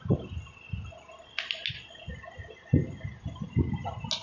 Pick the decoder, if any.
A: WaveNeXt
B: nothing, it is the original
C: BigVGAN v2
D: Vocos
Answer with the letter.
B